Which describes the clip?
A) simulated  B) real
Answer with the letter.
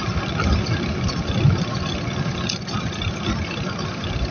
B